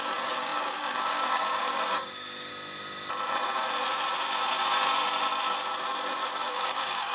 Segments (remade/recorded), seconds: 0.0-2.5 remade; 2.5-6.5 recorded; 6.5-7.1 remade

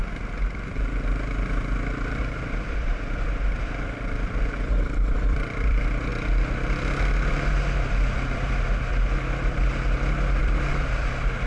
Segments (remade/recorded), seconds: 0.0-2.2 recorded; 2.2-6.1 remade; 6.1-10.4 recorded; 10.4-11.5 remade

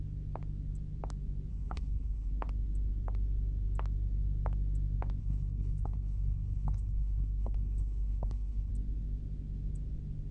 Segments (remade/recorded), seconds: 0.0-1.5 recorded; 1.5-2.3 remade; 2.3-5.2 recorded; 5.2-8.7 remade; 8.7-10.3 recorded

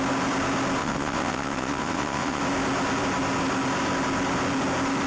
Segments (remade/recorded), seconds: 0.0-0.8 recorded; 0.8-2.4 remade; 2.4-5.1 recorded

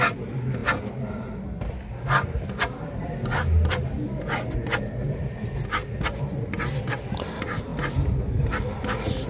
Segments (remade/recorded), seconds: 0.0-9.3 recorded

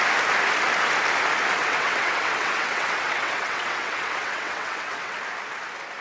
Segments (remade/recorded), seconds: 0.0-1.6 recorded; 1.6-5.2 remade; 5.2-6.0 recorded

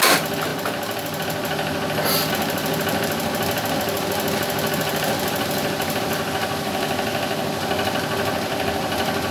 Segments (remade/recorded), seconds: 0.0-9.3 recorded

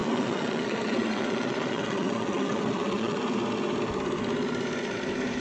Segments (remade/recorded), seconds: 0.0-3.2 remade; 3.2-5.4 recorded